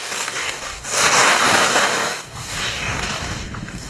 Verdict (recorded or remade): remade